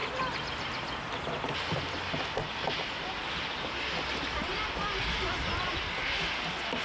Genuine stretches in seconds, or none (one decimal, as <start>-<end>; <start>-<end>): 0.0-6.8